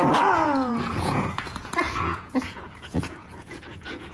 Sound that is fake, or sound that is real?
fake